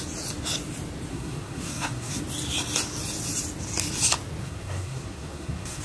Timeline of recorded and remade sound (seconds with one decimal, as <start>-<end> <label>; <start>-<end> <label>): 0.0-1.1 recorded; 1.1-2.2 remade; 2.2-4.4 recorded; 4.4-5.8 remade